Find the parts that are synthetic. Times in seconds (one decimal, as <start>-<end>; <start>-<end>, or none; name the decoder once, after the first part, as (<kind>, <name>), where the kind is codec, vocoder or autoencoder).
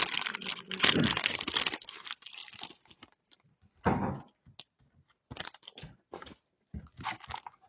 none